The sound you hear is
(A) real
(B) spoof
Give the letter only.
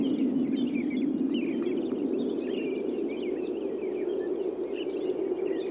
A